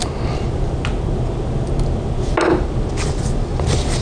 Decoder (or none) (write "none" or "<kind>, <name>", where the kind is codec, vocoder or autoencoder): none